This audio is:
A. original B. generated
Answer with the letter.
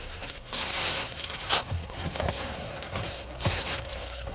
B